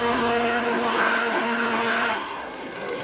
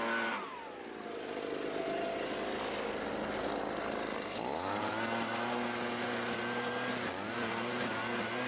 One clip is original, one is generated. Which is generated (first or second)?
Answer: first